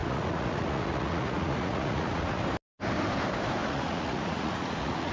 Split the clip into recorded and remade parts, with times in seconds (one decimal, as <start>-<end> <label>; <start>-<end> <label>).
0.0-2.4 remade; 2.4-3.6 recorded; 3.6-5.1 remade